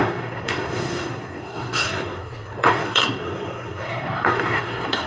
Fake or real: fake